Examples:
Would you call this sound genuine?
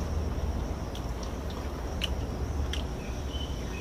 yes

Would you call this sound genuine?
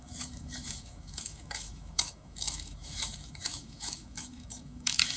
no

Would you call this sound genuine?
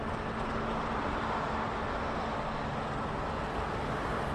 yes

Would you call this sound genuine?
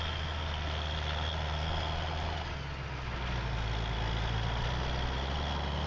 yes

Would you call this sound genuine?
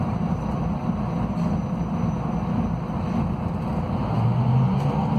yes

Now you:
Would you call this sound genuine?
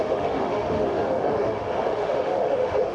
no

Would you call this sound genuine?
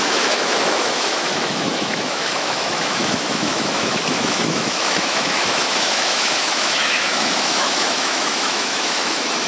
no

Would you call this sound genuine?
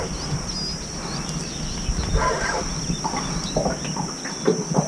yes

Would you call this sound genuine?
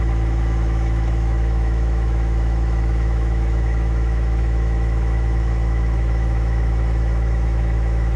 no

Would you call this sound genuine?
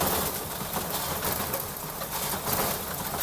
yes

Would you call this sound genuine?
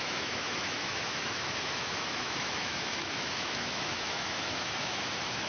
no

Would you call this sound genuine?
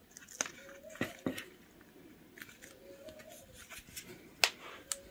yes